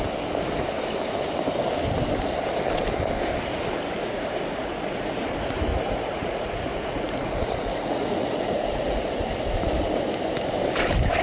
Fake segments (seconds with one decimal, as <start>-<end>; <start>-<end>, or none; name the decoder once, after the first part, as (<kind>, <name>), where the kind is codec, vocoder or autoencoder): 4.0-5.2 (vocoder, Vocos); 5.7-9.2